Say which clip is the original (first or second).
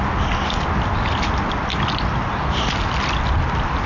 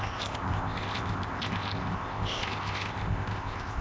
first